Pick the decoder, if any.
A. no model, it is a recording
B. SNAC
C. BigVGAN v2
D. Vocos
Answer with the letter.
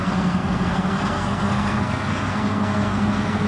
B